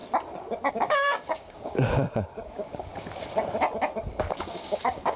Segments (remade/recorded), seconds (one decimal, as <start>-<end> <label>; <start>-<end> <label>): 0.0-0.7 recorded; 0.7-2.9 remade; 2.9-4.3 recorded; 4.3-5.2 remade